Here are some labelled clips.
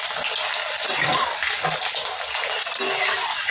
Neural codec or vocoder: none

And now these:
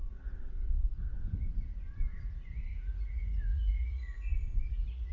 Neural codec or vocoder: vocoder, Vocos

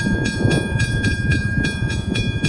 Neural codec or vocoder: vocoder, Vocos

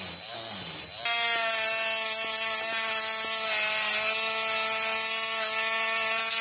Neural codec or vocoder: none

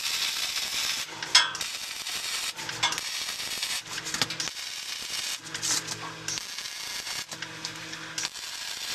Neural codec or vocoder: none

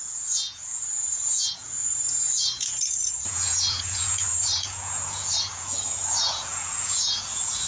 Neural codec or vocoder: vocoder, Vocos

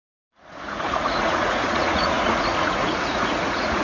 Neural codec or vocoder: vocoder, Vocos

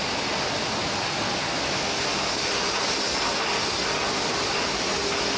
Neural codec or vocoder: none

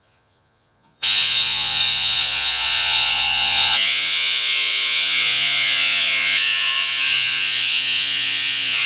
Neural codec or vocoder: vocoder, Vocos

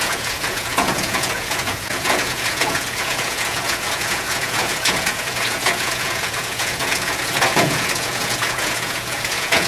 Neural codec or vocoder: vocoder, Vocos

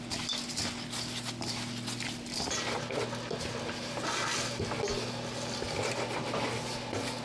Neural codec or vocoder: none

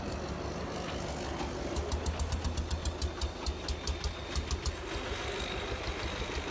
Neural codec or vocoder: none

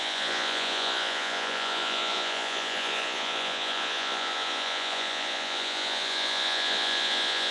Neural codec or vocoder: vocoder, Vocos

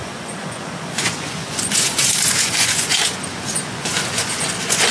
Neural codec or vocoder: vocoder, Vocos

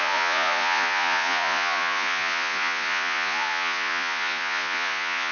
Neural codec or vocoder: vocoder, Vocos